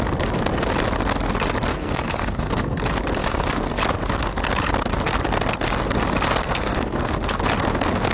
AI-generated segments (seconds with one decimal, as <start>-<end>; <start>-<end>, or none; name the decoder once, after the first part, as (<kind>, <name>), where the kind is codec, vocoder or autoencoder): 1.7-2.8 (codec, SNAC); 3.2-3.8; 6.4-7.1